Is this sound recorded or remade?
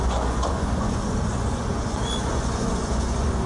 remade